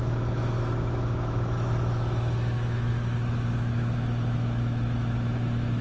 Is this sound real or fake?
fake